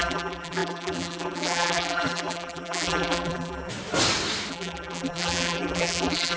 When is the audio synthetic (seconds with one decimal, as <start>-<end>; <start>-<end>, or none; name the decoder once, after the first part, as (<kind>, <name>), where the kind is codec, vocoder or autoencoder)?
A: 0.0-3.7 (vocoder, BigVGAN v2); 4.5-6.4